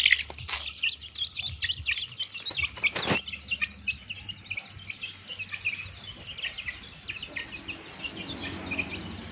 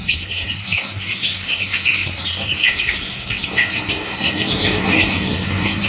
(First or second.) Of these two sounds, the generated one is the second